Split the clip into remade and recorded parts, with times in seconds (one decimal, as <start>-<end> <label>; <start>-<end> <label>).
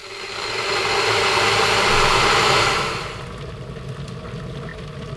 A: 0.0-5.2 recorded